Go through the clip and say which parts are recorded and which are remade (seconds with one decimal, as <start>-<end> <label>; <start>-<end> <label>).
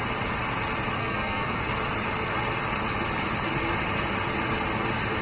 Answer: 0.0-1.0 recorded; 1.0-1.6 remade; 1.6-5.2 recorded